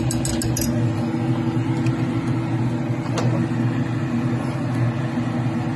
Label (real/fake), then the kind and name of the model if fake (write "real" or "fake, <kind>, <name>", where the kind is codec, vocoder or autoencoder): real